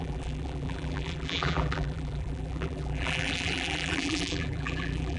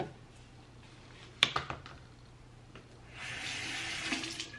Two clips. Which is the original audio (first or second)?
second